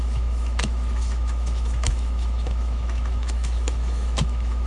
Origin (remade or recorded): remade